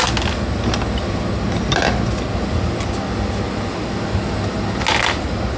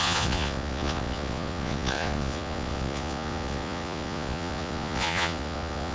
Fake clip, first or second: second